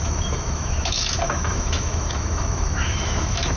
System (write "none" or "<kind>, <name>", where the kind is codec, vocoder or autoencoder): autoencoder, DAC-VAE